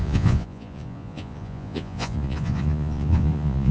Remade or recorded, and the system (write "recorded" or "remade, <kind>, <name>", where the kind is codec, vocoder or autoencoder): remade, vocoder, Vocos